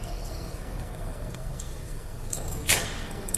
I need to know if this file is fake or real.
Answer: fake